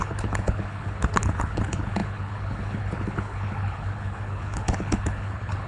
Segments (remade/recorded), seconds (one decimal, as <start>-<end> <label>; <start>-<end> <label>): 0.0-5.7 remade